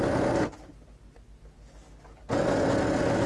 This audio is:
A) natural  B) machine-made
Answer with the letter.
A